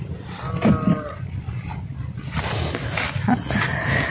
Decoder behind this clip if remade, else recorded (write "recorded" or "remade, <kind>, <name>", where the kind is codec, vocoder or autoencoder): recorded